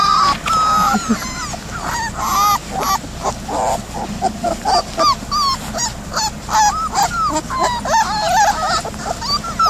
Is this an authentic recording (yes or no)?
yes